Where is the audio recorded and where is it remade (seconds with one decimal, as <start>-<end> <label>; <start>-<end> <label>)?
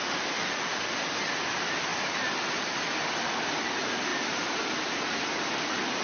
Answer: 0.0-1.9 recorded; 1.9-2.5 remade; 2.5-4.1 recorded; 4.1-5.3 remade; 5.3-6.0 recorded